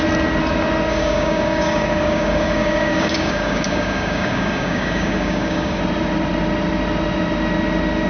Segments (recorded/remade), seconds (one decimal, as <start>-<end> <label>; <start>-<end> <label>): 0.0-0.9 recorded; 0.9-5.8 remade; 5.8-8.1 recorded